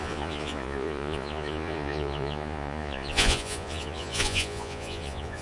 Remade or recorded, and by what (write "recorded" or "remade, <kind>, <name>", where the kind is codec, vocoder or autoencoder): remade, vocoder, Vocos